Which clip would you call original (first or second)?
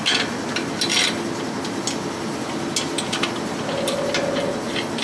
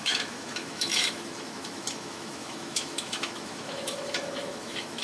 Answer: first